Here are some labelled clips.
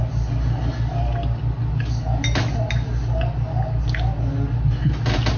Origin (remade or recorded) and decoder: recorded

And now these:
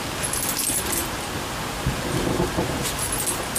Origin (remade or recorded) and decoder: recorded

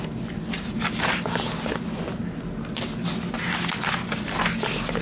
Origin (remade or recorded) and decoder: recorded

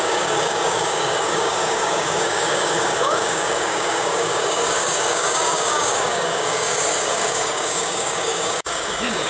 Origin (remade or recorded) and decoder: remade, codec, DAC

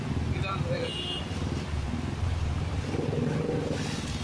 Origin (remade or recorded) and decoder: recorded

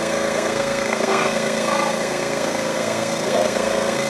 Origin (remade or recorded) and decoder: remade, codec, SNAC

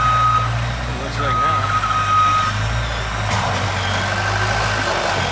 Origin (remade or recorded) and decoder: recorded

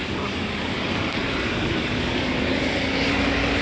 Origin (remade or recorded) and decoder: remade, codec, DAC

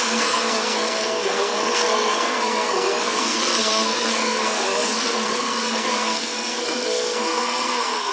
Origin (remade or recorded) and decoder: remade, codec, SNAC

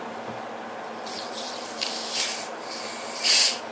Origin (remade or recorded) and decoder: recorded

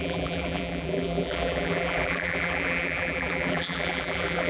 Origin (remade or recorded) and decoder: remade, vocoder, BigVGAN v2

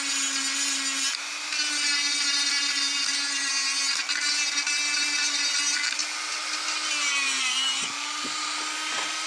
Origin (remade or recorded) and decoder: recorded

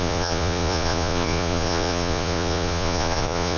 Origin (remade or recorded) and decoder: remade, vocoder, Vocos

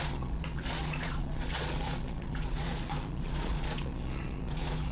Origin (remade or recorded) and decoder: remade, vocoder, Vocos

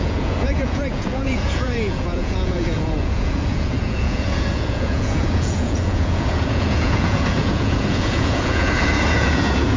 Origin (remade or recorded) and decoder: remade, vocoder, Vocos